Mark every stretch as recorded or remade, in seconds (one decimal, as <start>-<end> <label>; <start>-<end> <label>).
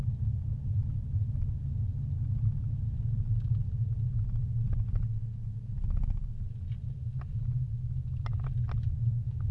0.0-9.5 recorded